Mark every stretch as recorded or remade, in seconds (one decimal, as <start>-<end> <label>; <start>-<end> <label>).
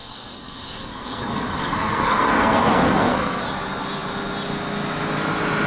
0.0-3.4 remade; 3.4-5.7 recorded